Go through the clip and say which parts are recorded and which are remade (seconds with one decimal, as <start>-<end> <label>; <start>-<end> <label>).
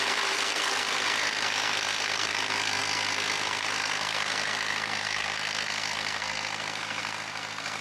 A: 0.0-7.8 remade